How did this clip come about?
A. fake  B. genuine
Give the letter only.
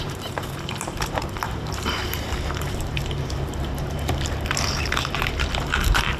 A